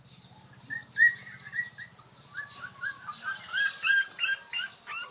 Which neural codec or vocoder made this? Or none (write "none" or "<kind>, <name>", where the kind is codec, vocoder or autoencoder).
none